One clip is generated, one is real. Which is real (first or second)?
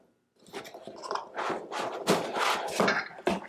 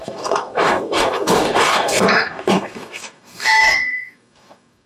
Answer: first